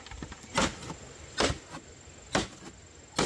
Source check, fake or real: real